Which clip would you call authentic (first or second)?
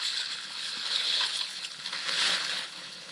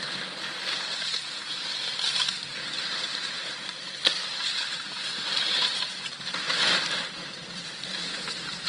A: second